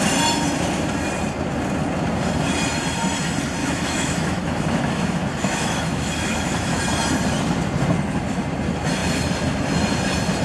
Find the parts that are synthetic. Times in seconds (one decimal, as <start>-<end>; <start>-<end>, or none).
3.6-6.8